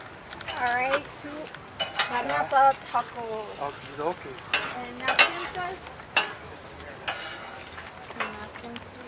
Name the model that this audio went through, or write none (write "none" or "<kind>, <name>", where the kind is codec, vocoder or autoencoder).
none